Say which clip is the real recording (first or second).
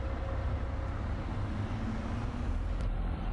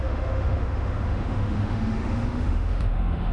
first